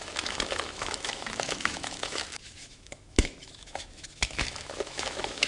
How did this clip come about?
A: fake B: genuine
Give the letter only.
A